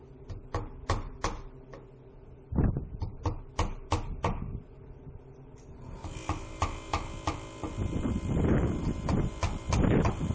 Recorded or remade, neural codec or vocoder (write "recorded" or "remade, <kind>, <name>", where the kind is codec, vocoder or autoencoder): recorded